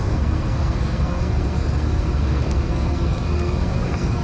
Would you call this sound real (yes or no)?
no